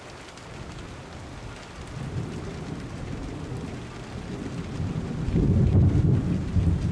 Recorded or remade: recorded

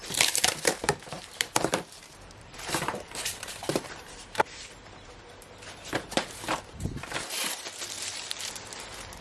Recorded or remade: remade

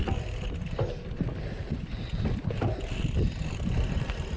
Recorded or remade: remade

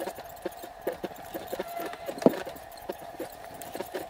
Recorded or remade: remade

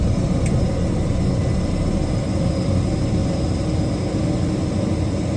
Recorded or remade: recorded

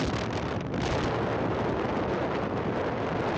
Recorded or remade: recorded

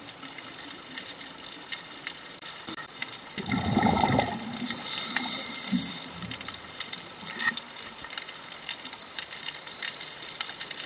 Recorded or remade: remade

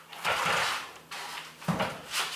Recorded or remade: recorded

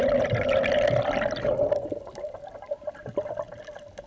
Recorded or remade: recorded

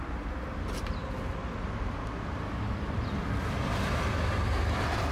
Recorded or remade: remade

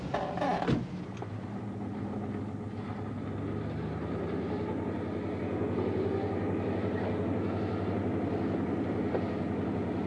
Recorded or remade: recorded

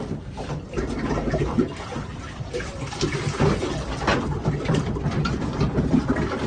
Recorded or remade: recorded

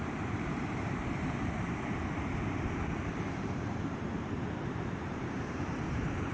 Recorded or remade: remade